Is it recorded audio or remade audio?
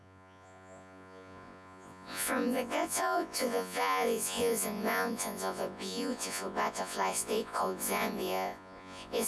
remade